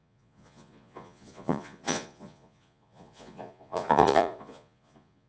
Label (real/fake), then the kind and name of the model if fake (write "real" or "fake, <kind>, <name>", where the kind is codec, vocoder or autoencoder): fake, vocoder, Vocos